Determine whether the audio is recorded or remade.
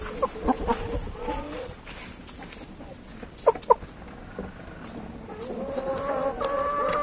recorded